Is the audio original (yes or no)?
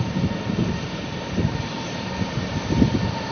no